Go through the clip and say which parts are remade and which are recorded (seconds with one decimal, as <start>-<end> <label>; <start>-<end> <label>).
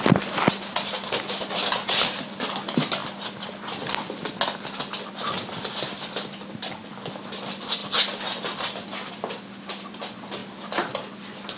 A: 0.0-11.6 recorded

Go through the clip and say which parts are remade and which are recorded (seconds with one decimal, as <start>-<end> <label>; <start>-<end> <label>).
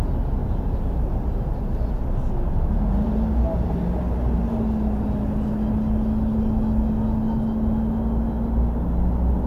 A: 0.0-0.4 recorded; 0.4-4.0 remade; 4.0-9.5 recorded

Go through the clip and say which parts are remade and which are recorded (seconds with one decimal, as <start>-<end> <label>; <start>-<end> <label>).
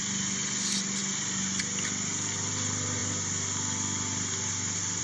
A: 0.0-5.0 recorded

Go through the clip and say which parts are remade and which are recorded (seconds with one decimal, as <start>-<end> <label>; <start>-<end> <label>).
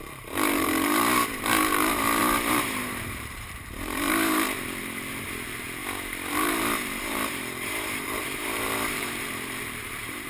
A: 0.0-5.8 remade; 5.8-6.3 recorded; 6.3-10.3 remade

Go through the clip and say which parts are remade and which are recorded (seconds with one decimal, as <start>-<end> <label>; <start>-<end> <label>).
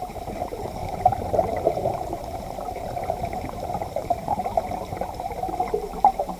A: 0.0-6.4 remade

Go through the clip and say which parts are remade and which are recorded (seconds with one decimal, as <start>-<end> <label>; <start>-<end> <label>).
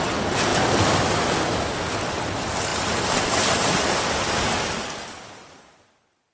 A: 0.0-0.5 recorded; 0.5-1.0 remade; 1.0-2.7 recorded; 2.7-4.4 remade; 4.4-6.3 recorded